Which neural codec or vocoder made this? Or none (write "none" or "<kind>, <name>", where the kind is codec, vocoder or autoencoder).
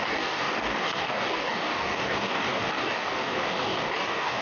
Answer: codec, DAC